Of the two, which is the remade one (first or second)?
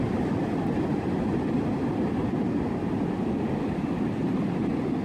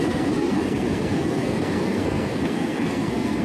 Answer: second